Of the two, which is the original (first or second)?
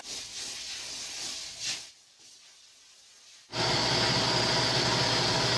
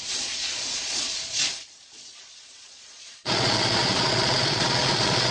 first